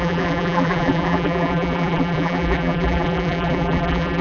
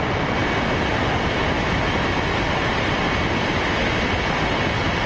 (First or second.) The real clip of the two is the second